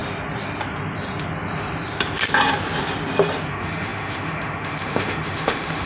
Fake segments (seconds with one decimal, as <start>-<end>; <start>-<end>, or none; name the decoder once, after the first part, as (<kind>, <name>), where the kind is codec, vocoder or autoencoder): 3.5-5.9 (autoencoder, DAC-VAE)